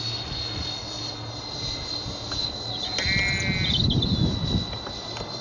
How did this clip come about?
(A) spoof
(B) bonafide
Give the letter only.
B